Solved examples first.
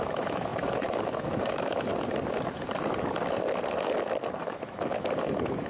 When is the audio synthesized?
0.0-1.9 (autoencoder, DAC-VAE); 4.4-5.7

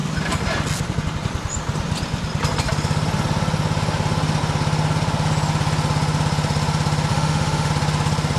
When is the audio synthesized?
7.1-7.7 (autoencoder, DAC-VAE)